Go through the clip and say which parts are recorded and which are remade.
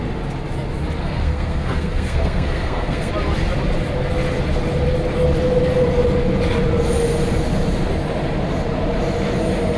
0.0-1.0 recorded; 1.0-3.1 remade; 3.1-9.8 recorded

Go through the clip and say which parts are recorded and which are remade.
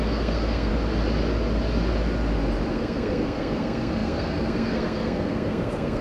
0.0-0.7 remade; 0.7-2.7 recorded; 2.7-6.0 remade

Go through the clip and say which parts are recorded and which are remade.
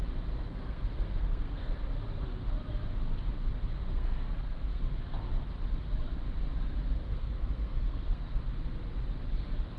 0.0-0.5 recorded; 0.5-1.8 remade; 1.8-3.8 recorded; 3.8-4.8 remade; 4.8-7.1 recorded; 7.1-8.4 remade; 8.4-9.8 recorded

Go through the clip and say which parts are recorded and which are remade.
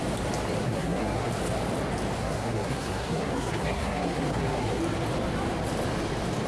0.0-0.6 recorded; 0.6-1.3 remade; 1.3-2.2 recorded; 2.2-4.8 remade; 4.8-6.5 recorded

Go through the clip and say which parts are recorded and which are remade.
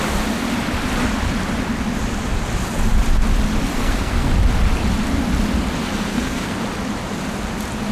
0.0-3.7 recorded; 3.7-4.3 remade; 4.3-6.1 recorded; 6.1-6.6 remade; 6.6-7.9 recorded